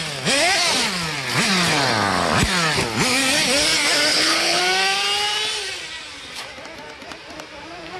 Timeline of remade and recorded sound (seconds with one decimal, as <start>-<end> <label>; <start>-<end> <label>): 0.0-4.1 recorded; 4.1-4.6 remade; 4.6-8.0 recorded

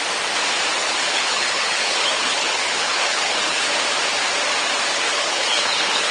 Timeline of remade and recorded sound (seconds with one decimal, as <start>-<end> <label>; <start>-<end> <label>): 0.0-0.8 recorded; 0.8-3.7 remade; 3.7-4.9 recorded; 4.9-6.1 remade

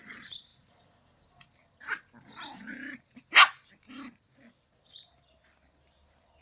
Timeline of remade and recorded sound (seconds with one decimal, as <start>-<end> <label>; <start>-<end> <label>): 0.0-6.4 recorded

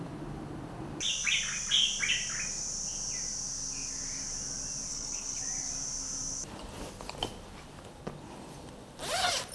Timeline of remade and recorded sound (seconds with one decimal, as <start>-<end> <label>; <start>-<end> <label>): 0.0-4.9 recorded; 4.9-5.4 remade; 5.4-9.5 recorded